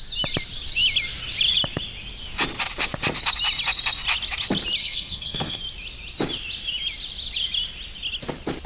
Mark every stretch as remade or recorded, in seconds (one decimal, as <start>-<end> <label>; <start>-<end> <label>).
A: 0.0-4.8 recorded; 4.8-5.6 remade; 5.6-8.7 recorded